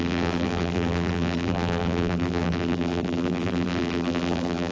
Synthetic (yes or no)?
yes